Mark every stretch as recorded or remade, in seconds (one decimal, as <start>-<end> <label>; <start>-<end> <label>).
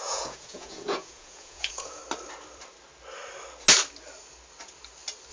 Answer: 0.0-2.0 remade; 2.0-5.3 recorded